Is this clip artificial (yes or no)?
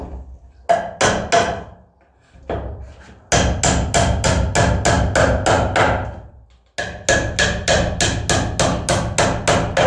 no